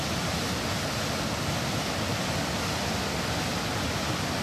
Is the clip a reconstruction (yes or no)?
no